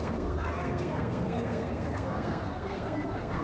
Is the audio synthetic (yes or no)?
yes